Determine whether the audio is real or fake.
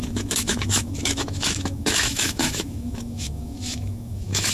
fake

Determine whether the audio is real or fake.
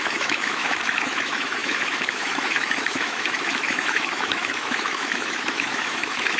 fake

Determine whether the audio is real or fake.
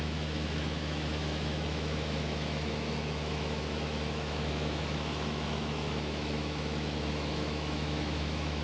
fake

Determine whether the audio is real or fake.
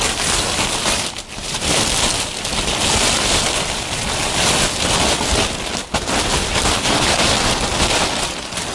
real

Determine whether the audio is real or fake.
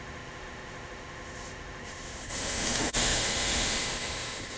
fake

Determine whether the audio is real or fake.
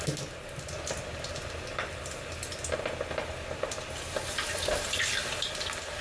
real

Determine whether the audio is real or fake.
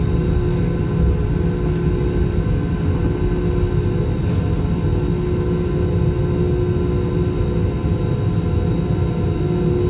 real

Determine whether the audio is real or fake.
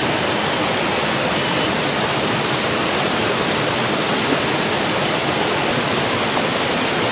real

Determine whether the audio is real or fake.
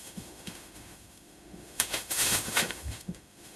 fake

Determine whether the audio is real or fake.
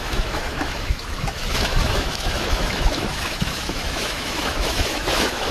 fake